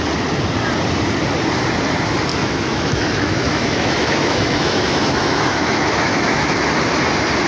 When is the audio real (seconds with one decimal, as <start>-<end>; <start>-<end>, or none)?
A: 0.0-2.3; 6.7-7.5